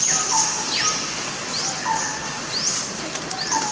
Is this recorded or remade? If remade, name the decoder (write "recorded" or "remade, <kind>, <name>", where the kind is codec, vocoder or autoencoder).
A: recorded